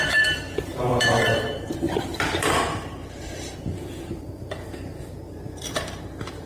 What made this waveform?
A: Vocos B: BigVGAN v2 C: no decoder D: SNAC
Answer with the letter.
B